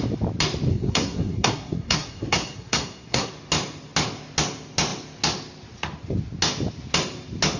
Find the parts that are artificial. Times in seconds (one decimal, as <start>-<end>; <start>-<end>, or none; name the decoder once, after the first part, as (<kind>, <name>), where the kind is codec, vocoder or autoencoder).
0.7-3.3 (codec, SNAC)